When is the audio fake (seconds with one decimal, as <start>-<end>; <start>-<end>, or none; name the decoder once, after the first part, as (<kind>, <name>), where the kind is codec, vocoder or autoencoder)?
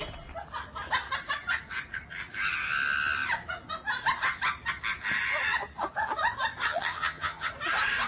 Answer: 6.7-7.5 (vocoder, HiFi-GAN)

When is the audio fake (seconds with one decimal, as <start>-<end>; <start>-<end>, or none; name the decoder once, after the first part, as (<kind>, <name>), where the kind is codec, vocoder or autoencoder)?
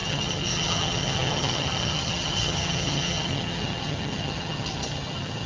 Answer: 0.0-5.5 (vocoder, HiFi-GAN)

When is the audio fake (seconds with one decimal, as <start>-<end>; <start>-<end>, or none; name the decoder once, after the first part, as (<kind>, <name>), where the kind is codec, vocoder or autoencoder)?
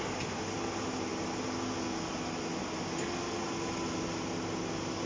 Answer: none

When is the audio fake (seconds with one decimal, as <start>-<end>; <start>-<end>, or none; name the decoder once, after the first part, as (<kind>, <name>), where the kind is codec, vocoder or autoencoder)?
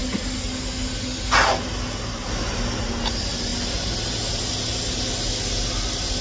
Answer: none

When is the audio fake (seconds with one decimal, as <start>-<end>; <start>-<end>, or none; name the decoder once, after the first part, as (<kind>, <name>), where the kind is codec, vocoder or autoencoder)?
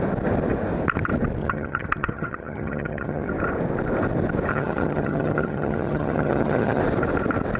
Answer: 1.4-3.3 (vocoder, HiFi-GAN); 4.5-6.8